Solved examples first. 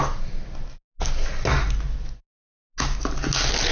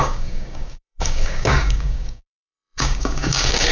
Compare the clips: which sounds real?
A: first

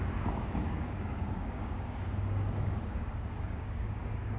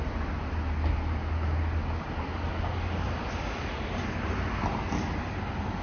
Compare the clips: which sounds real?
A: second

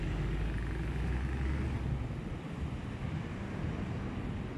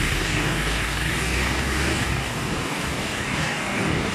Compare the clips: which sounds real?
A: first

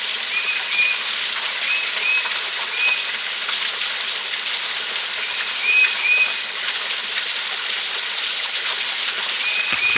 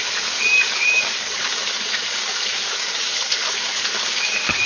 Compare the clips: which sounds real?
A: first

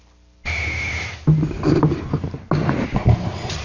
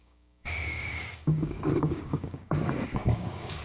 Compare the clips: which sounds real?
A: first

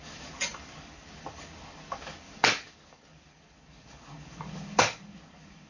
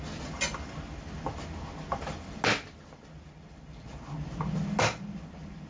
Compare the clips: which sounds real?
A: second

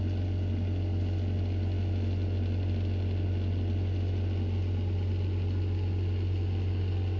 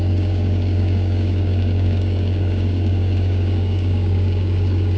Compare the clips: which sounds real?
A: first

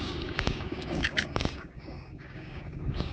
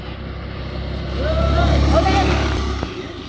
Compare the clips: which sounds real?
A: second